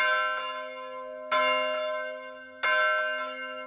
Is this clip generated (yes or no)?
no